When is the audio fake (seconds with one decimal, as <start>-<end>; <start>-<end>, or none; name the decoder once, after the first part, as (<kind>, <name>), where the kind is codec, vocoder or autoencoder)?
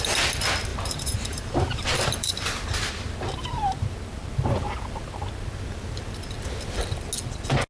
0.7-2.9 (vocoder, BigVGAN v2)